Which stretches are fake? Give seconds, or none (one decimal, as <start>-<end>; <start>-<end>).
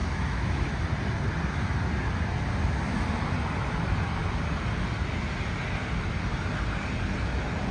0.0-0.9